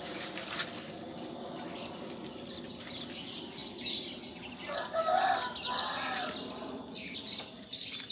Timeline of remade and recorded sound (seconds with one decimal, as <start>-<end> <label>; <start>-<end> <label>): 0.0-8.1 recorded